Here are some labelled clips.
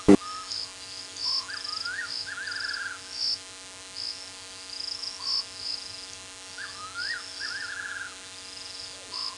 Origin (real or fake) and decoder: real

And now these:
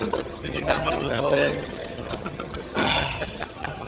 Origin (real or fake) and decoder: fake, vocoder, HiFi-GAN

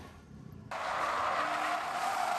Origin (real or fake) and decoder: real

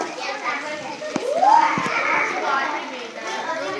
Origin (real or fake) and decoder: real